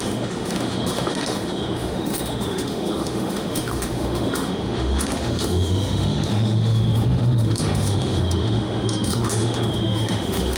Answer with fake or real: fake